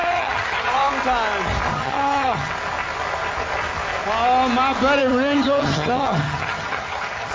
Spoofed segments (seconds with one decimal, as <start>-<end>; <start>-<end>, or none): 0.0-0.7; 1.7-2.5; 5.0-7.3